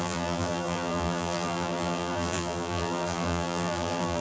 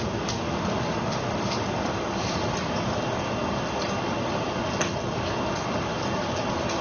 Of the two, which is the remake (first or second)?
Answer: first